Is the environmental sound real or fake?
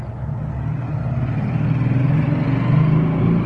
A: real